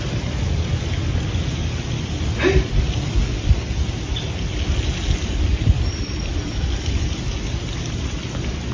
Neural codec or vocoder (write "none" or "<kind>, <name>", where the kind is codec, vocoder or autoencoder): none